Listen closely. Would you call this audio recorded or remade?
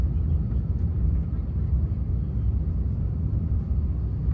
recorded